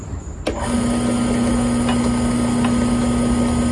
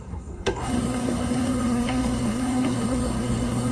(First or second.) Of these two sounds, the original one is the first